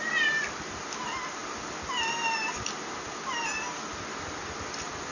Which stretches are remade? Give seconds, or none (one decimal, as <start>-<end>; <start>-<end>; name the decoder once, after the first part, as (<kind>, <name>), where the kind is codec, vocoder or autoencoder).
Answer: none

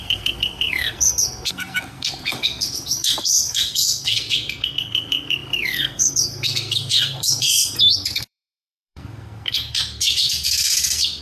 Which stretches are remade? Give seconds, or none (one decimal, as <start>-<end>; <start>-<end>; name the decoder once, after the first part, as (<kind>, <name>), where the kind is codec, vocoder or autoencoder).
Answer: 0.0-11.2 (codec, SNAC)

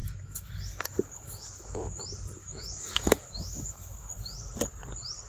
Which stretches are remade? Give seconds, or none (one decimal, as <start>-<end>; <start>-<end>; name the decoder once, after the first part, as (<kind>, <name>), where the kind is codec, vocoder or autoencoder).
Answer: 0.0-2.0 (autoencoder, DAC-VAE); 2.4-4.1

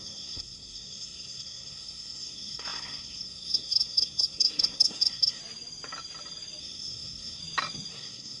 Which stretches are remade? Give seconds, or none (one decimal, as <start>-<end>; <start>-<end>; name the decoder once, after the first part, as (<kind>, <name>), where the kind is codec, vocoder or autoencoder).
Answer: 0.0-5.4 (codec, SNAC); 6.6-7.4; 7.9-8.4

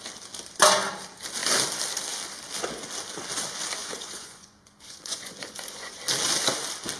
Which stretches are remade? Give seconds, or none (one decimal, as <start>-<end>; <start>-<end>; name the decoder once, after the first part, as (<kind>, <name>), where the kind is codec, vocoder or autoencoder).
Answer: 3.8-6.0 (vocoder, Vocos)